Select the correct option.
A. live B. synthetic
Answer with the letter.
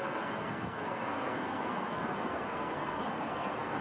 B